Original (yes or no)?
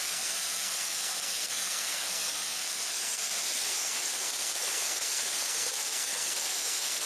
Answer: no